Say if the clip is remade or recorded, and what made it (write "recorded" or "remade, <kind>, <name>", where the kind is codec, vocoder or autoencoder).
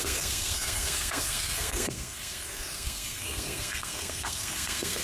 remade, codec, SNAC